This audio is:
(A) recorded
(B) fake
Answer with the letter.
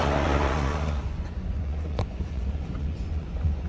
B